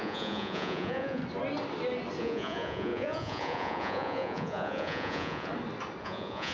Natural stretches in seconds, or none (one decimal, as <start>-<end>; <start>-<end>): 1.2-2.2; 5.5-6.0